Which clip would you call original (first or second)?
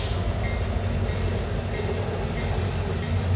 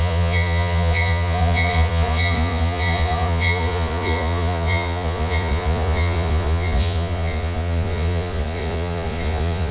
first